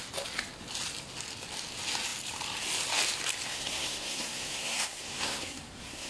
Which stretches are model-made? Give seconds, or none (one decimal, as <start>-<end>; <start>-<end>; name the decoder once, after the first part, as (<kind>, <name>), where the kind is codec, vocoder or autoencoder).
3.5-6.1 (codec, SNAC)